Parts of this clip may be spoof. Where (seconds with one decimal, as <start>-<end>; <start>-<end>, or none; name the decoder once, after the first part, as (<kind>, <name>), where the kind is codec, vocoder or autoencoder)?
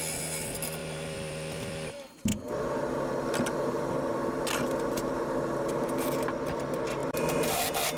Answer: 0.8-1.9 (vocoder, BigVGAN v2); 7.0-7.6